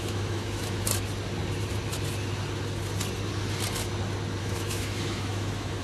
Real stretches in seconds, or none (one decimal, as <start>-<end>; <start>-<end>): 0.9-4.4